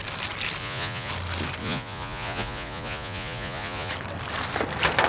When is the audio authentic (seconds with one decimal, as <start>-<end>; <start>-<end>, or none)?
0.0-0.6; 1.1-1.6; 3.9-5.1